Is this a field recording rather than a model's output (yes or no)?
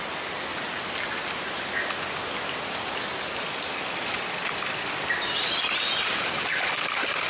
yes